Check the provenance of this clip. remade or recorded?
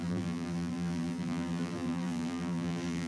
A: remade